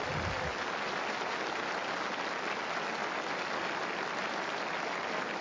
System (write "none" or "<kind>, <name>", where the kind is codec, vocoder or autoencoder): none